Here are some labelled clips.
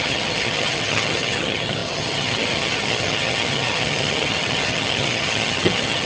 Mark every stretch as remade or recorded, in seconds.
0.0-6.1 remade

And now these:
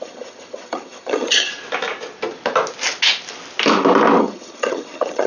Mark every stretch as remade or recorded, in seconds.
0.0-1.5 remade; 1.5-4.2 recorded; 4.2-5.3 remade

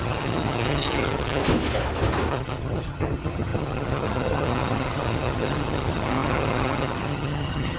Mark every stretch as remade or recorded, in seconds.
0.0-1.4 remade; 1.4-2.3 recorded; 2.3-7.8 remade

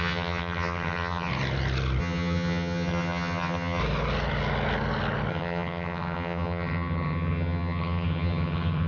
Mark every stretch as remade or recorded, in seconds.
0.0-1.3 remade; 1.3-2.0 recorded; 2.0-3.8 remade; 3.8-5.3 recorded; 5.3-8.9 remade

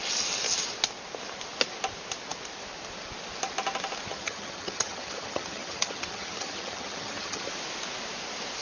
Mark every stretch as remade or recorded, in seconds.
0.0-4.1 recorded; 4.1-7.5 remade; 7.5-8.6 recorded